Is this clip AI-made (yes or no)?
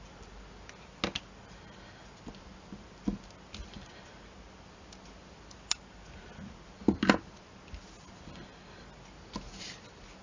no